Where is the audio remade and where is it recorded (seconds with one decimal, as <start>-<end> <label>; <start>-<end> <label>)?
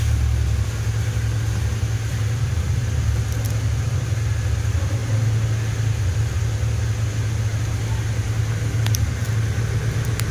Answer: 0.0-2.1 recorded; 2.1-2.8 remade; 2.8-7.5 recorded; 7.5-8.4 remade; 8.4-10.3 recorded